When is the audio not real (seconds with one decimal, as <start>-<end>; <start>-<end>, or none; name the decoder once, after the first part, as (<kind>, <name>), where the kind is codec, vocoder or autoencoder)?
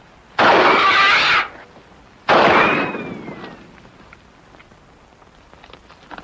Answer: none